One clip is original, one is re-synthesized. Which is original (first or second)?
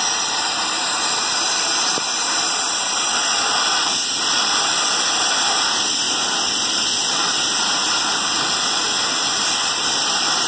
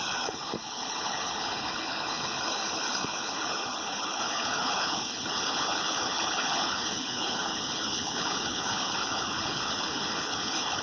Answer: first